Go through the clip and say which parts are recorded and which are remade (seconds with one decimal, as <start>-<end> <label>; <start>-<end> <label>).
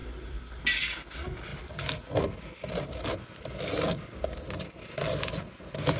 0.0-6.0 recorded